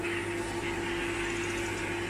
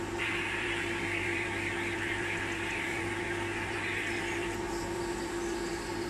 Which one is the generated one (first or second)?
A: second